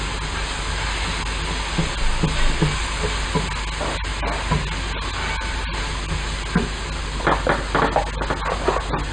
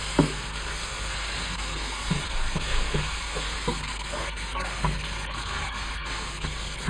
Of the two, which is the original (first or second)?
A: first